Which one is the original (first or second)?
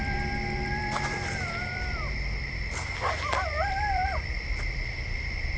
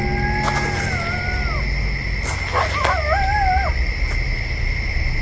second